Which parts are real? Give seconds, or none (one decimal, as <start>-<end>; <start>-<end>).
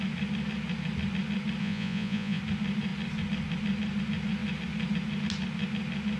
0.0-1.6; 2.4-6.2